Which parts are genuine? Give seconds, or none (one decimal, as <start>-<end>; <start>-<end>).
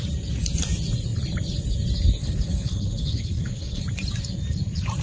0.0-2.2; 3.8-5.0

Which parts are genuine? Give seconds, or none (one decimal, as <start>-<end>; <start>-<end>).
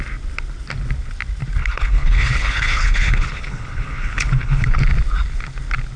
0.0-1.6; 4.8-6.0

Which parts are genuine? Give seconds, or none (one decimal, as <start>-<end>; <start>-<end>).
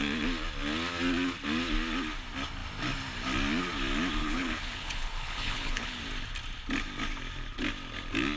0.0-4.2; 6.0-8.4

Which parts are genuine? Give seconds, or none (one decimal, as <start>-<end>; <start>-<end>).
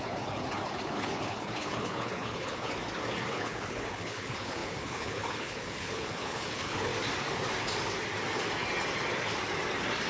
2.7-3.3; 6.9-10.1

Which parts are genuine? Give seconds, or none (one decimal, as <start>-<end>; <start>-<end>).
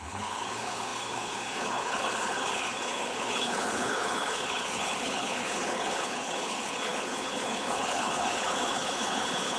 none